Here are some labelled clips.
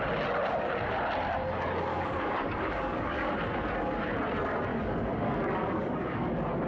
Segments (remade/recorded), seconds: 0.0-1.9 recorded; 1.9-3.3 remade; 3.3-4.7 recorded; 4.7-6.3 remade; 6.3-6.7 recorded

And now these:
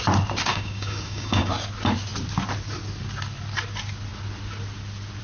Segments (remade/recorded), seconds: 0.0-0.5 recorded; 0.5-1.5 remade; 1.5-5.2 recorded

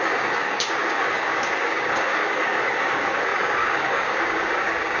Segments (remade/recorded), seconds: 0.0-5.0 remade

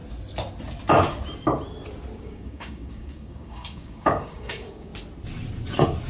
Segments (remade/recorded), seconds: 0.0-2.2 recorded; 2.2-4.9 remade; 4.9-6.1 recorded

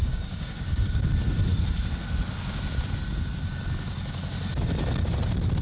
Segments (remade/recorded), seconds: 0.0-1.1 remade; 1.1-5.6 recorded

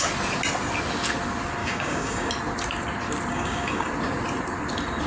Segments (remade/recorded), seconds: 0.0-1.6 recorded; 1.6-2.3 remade; 2.3-3.3 recorded; 3.3-3.9 remade; 3.9-5.1 recorded

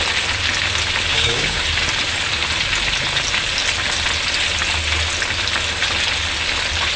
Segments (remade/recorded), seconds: 0.0-1.1 recorded; 1.1-1.6 remade; 1.6-7.0 recorded

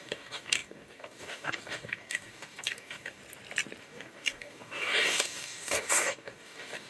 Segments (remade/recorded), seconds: 0.0-3.2 remade; 3.2-3.8 recorded; 3.8-6.9 remade